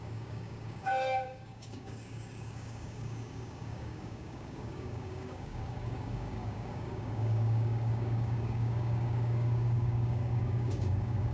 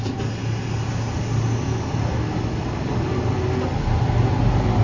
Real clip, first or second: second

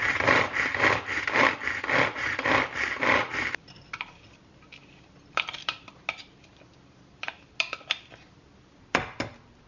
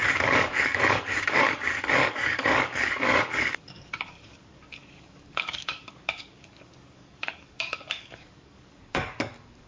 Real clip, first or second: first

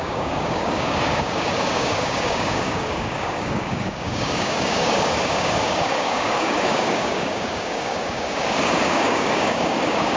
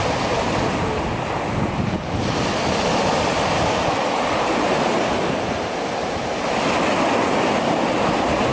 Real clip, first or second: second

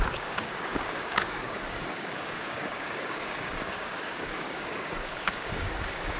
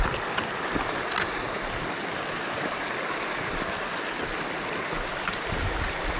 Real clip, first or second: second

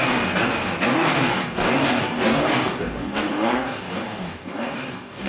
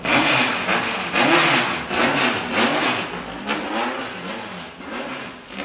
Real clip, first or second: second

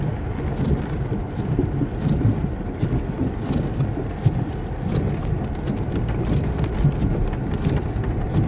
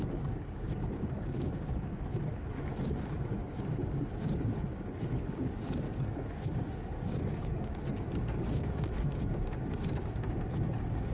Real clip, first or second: first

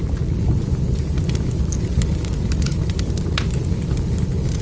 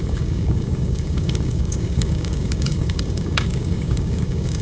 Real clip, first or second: first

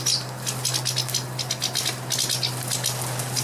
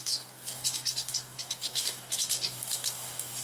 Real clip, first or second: first